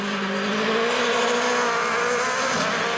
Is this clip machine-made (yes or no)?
no